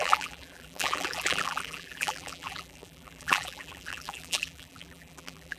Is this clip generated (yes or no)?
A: yes